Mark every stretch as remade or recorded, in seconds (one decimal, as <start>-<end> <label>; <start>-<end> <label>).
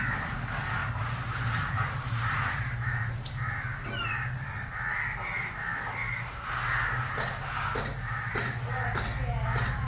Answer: 0.0-0.8 recorded; 0.8-3.5 remade; 3.5-9.9 recorded